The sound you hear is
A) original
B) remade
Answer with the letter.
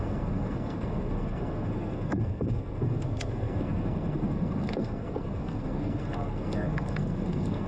B